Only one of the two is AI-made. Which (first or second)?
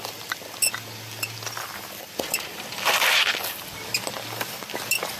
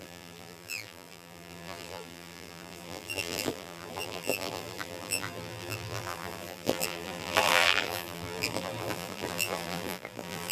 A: second